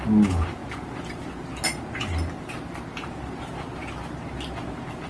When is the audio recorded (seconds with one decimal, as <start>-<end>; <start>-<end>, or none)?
0.0-5.1